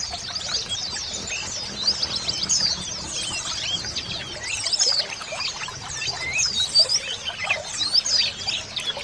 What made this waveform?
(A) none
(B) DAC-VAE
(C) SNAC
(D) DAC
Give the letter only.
A